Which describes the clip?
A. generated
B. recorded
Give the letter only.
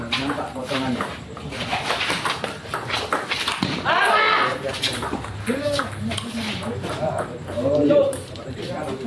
A